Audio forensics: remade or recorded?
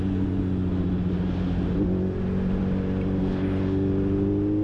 recorded